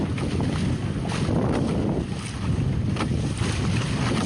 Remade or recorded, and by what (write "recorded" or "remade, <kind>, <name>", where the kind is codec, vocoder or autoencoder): recorded